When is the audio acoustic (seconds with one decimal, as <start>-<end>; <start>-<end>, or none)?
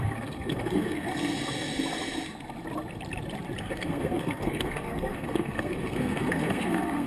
1.1-3.6